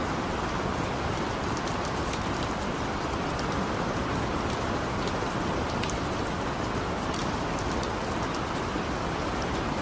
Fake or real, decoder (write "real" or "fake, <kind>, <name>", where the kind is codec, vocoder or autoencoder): real